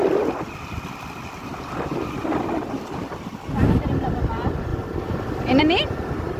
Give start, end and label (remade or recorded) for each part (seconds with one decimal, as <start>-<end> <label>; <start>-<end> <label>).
0.0-1.4 recorded; 1.4-2.2 remade; 2.2-6.4 recorded

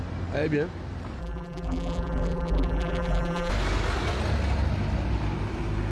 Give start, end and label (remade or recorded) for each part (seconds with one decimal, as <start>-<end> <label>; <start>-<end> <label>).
0.0-1.2 recorded; 1.2-3.5 remade; 3.5-5.9 recorded

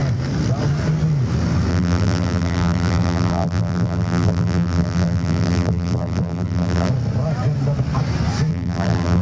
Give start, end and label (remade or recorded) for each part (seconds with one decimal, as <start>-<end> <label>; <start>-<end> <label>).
0.0-1.7 recorded; 1.7-6.9 remade; 6.9-8.5 recorded; 8.5-9.2 remade

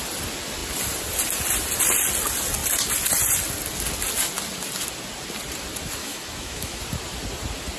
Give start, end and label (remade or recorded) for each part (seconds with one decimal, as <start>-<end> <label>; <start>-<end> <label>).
0.0-6.0 recorded; 6.0-6.8 remade; 6.8-7.8 recorded

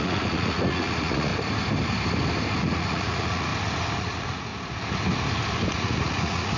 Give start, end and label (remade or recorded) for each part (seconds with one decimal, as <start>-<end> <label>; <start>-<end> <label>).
0.0-1.3 remade; 1.3-2.6 recorded; 2.6-3.5 remade; 3.5-4.0 recorded; 4.0-4.5 remade; 4.5-5.7 recorded; 5.7-6.6 remade

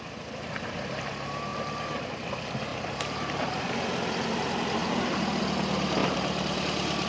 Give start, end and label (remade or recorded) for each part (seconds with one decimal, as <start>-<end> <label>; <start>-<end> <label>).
0.0-1.5 recorded; 1.5-2.1 remade; 2.1-2.7 recorded; 2.7-3.7 remade; 3.7-4.8 recorded; 4.8-5.4 remade; 5.4-6.0 recorded; 6.0-6.6 remade; 6.6-7.1 recorded

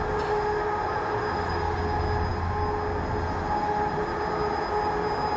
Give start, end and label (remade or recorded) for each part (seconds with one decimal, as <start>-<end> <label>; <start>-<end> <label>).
0.0-5.4 recorded

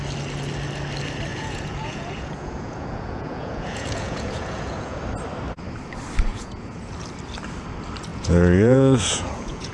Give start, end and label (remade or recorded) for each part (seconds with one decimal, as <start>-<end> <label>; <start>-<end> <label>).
0.0-1.3 recorded; 1.3-5.0 remade; 5.0-6.3 recorded; 6.3-6.9 remade; 6.9-8.1 recorded; 8.1-9.7 remade